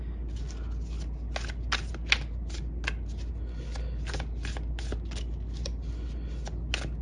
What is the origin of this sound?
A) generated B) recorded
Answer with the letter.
B